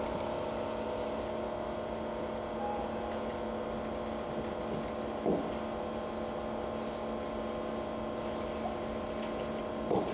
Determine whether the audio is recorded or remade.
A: recorded